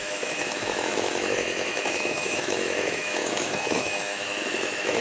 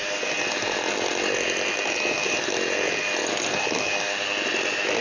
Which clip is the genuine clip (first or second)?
second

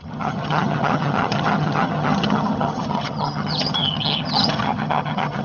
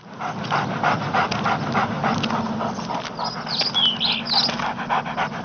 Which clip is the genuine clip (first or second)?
second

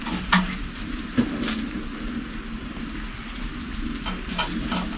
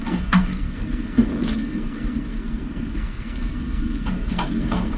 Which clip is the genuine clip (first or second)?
first